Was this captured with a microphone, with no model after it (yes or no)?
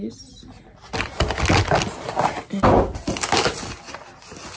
yes